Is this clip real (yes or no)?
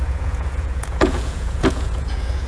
no